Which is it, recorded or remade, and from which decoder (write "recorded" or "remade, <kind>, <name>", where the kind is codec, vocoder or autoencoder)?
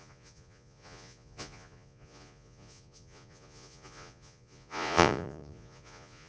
remade, vocoder, Vocos